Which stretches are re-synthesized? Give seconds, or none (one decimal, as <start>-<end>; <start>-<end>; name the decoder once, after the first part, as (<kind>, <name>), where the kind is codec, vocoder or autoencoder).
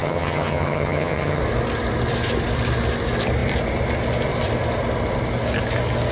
0.0-1.4 (vocoder, HiFi-GAN)